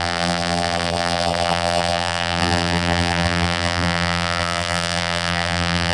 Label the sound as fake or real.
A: fake